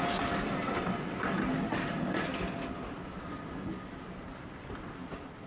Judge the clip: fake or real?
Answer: real